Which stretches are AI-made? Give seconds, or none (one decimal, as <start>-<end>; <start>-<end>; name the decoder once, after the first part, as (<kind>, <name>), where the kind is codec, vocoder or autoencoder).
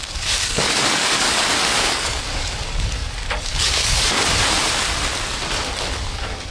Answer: 0.0-4.2 (codec, DAC); 6.0-6.5